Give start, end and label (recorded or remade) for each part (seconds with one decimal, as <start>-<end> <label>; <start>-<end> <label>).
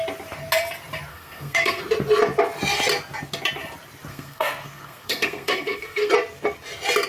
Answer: 0.0-1.1 recorded; 1.1-1.8 remade; 1.8-4.1 recorded; 4.1-6.1 remade; 6.1-7.1 recorded